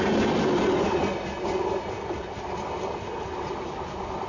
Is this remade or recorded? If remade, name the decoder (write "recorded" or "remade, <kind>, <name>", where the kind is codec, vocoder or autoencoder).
recorded